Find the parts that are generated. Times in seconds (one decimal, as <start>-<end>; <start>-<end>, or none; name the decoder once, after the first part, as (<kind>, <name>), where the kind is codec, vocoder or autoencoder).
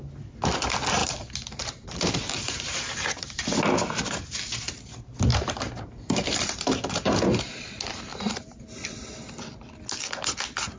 1.0-3.6 (vocoder, BigVGAN v2); 5.3-7.4; 8.1-8.6